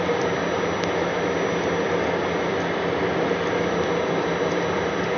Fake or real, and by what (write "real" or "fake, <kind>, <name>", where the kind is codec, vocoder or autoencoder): real